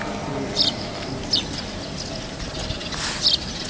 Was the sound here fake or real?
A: real